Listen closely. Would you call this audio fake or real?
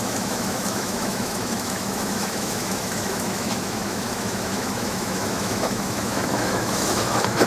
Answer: fake